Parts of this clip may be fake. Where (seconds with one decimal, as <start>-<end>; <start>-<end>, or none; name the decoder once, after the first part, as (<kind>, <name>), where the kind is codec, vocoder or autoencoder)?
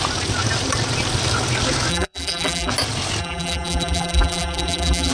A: 1.9-2.7 (vocoder, BigVGAN v2); 3.2-5.1